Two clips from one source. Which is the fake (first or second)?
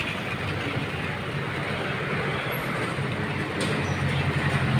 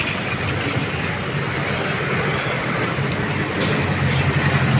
second